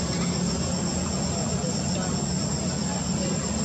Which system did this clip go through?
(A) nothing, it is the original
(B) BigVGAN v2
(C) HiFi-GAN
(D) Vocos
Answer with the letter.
A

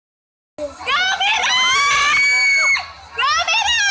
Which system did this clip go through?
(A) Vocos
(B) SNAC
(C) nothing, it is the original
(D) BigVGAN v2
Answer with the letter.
C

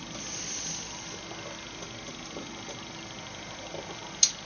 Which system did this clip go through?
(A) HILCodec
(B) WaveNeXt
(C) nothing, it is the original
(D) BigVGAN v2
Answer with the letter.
C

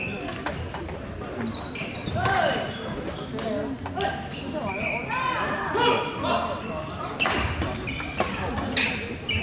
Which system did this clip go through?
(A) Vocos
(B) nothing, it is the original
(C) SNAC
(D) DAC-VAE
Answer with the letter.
B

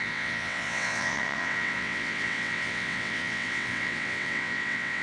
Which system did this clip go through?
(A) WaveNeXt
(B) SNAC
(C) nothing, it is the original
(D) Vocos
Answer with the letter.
A